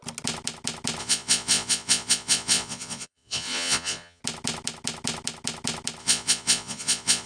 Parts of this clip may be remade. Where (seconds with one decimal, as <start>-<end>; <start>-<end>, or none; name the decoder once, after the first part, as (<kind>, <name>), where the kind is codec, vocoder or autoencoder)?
1.0-4.2 (vocoder, Vocos); 6.0-7.3